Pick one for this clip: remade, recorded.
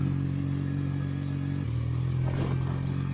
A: recorded